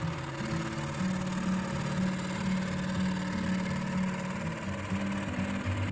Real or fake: real